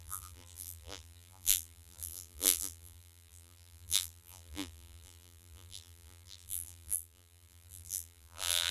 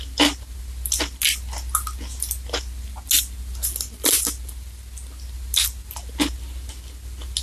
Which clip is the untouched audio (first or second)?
second